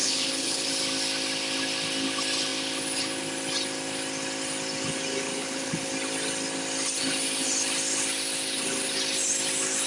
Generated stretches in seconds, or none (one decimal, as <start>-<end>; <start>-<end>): 0.0-0.7; 5.3-5.9